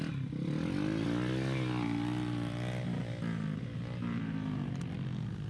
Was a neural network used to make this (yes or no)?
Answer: no